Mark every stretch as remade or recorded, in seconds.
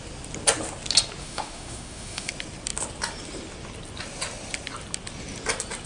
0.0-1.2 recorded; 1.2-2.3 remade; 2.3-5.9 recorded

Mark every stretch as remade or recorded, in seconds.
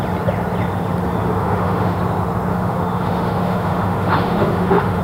0.0-1.4 recorded; 1.4-2.0 remade; 2.0-2.5 recorded; 2.5-5.0 remade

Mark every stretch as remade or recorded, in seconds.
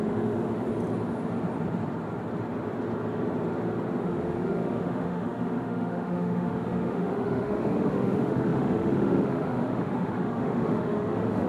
0.0-0.7 remade; 0.7-4.0 recorded; 4.0-11.5 remade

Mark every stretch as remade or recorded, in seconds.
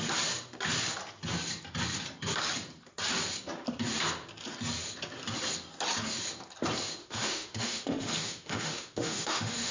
0.0-7.0 recorded; 7.0-9.7 remade